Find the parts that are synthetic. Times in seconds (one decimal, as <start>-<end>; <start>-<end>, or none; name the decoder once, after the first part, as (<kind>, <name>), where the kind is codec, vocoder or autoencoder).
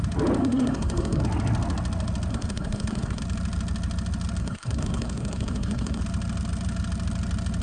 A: 0.4-1.2 (codec, SNAC); 2.3-3.2; 4.4-6.0